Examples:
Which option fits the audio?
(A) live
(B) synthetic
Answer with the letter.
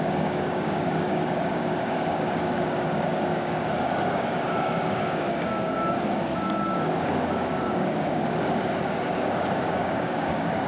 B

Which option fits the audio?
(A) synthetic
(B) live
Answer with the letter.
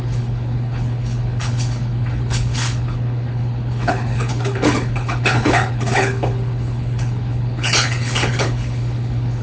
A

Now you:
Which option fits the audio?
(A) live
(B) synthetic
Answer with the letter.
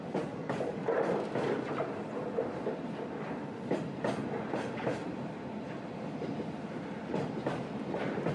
A